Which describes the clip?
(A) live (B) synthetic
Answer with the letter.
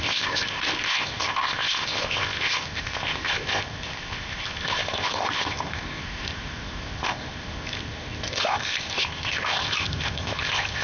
B